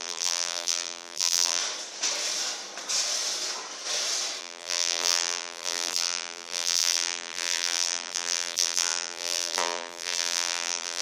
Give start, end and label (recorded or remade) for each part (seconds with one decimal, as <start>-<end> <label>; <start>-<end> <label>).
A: 0.0-1.6 remade; 1.6-4.4 recorded; 4.4-11.0 remade